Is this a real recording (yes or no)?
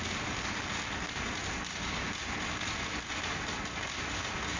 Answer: yes